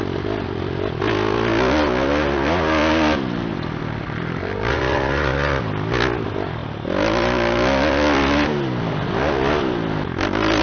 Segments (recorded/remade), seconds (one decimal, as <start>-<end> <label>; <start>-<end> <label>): 0.0-4.7 recorded; 4.7-5.6 remade; 5.6-10.6 recorded